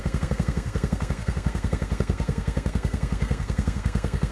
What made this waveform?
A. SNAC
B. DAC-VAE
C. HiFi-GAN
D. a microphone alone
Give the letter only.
A